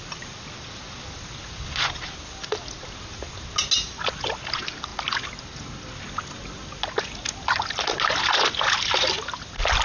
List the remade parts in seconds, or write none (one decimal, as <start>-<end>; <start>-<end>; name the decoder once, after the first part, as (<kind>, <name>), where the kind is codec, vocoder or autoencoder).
none